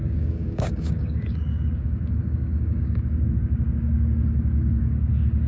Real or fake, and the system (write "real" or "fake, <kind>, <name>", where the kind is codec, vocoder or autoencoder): fake, codec, DAC